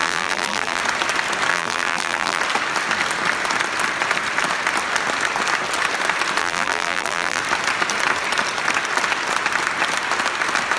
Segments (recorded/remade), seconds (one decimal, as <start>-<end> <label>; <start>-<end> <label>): 0.0-0.8 remade; 0.8-1.5 recorded; 1.5-2.4 remade; 2.4-6.4 recorded; 6.4-7.4 remade; 7.4-10.8 recorded